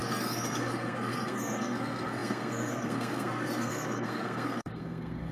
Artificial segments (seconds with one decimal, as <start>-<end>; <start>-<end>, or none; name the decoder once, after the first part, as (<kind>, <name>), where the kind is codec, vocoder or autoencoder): 0.0-5.3 (codec, SNAC)